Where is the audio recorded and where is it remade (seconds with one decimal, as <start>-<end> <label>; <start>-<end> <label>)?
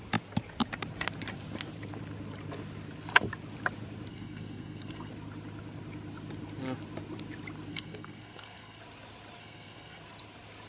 0.0-4.1 recorded; 4.1-5.1 remade; 5.1-7.7 recorded; 7.7-8.8 remade; 8.8-9.4 recorded; 9.4-10.0 remade; 10.0-10.7 recorded